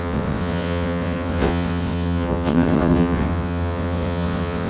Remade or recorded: remade